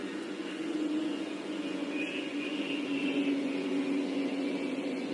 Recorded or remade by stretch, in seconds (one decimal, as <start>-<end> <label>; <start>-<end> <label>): 0.0-5.1 remade